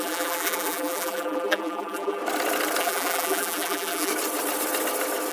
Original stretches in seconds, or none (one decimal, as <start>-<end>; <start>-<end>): 2.2-2.8; 4.1-5.3